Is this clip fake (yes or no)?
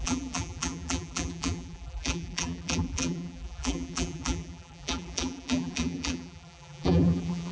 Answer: yes